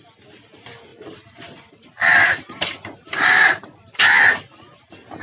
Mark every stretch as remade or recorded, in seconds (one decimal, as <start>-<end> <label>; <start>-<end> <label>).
0.0-0.9 recorded; 0.9-4.0 remade; 4.0-5.2 recorded